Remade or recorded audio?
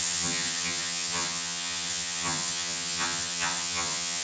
remade